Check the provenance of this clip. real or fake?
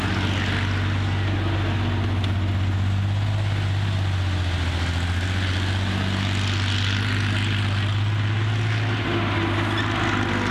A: real